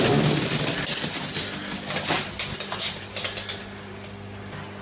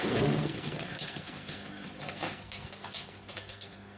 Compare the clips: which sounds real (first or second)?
first